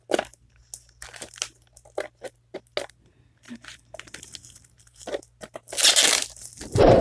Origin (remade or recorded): recorded